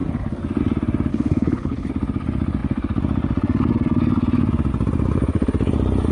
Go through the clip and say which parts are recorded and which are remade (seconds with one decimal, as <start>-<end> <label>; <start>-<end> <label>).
0.0-1.1 recorded; 1.1-1.9 remade; 1.9-6.1 recorded